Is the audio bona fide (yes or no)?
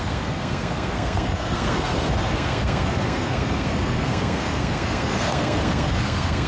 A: no